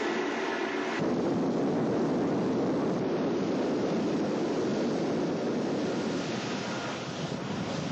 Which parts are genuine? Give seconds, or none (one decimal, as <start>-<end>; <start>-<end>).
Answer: 0.0-7.9